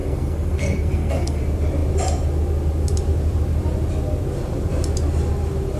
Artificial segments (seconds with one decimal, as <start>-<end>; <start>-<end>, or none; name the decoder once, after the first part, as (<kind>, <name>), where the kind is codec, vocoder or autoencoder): 0.0-1.4 (codec, SNAC)